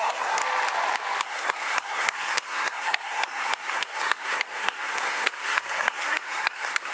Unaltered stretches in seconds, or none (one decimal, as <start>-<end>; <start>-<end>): 0.4-1.2